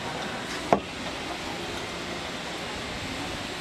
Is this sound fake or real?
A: real